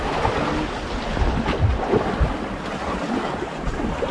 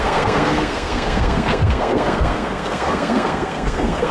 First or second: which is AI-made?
second